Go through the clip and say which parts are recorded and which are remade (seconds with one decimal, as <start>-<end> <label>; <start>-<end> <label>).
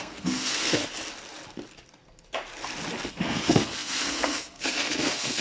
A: 0.0-0.8 remade; 0.8-3.1 recorded; 3.1-5.4 remade